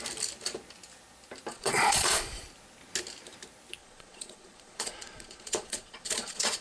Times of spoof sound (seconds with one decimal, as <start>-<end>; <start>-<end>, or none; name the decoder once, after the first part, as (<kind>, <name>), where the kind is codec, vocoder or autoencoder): 1.5-2.4 (vocoder, Vocos); 3.8-6.6